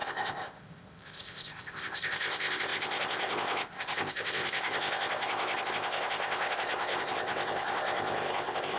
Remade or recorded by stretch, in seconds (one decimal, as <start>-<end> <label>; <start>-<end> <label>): 0.0-8.8 remade